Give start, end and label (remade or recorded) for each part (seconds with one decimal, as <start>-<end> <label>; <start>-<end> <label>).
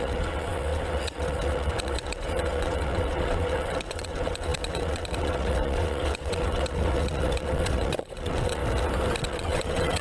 0.0-8.6 remade; 8.6-9.2 recorded; 9.2-10.0 remade